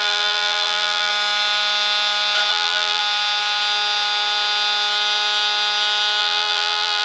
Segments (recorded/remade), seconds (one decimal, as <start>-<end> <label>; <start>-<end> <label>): 0.0-1.1 remade; 1.1-2.5 recorded; 2.5-3.0 remade; 3.0-6.2 recorded; 6.2-7.0 remade